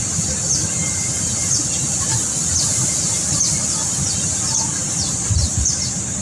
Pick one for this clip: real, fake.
real